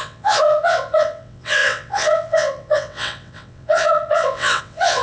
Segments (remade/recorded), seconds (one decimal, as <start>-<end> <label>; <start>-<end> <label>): 0.0-5.0 remade